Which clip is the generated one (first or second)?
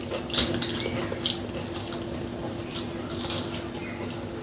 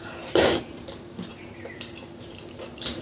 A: second